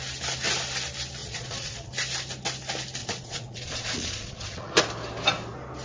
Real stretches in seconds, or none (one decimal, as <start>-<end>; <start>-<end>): 0.0-1.2; 1.9-3.0; 4.8-5.8